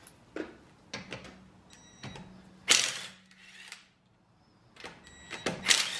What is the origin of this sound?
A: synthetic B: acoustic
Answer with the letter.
B